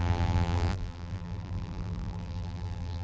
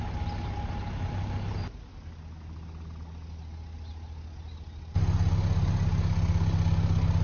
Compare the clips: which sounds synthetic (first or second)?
first